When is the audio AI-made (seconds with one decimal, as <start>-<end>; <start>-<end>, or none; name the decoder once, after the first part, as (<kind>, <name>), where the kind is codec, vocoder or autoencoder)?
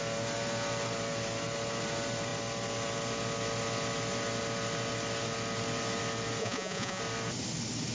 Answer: 6.4-7.0 (vocoder, Vocos)